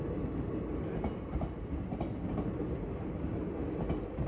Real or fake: real